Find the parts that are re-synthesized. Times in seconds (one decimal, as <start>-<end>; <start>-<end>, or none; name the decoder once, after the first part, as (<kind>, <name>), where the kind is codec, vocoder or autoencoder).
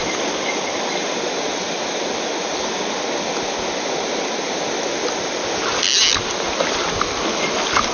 none